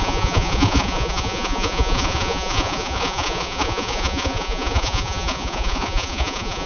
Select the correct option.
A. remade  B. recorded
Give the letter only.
A